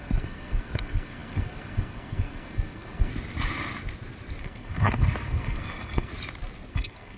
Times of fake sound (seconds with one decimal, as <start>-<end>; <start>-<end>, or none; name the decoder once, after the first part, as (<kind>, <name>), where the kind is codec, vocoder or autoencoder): 0.0-3.1 (codec, SNAC); 4.4-6.1; 6.7-7.2